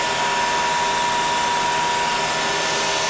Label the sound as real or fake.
real